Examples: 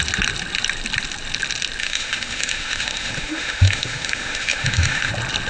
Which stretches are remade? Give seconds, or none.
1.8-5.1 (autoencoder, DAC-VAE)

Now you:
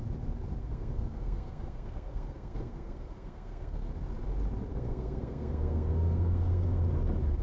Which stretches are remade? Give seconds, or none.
0.5-3.9 (codec, SNAC); 4.7-6.8

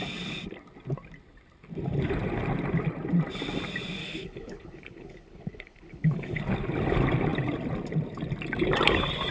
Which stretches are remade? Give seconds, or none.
4.0-6.4 (codec, HILCodec)

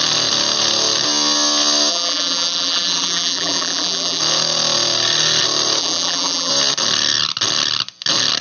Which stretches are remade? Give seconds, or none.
1.9-4.2 (vocoder, BigVGAN v2); 5.8-6.5

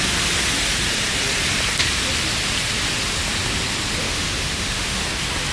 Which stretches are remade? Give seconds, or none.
4.0-5.0 (autoencoder, DAC-VAE)

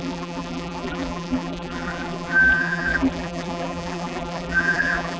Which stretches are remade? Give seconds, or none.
0.0-5.2 (vocoder, BigVGAN v2)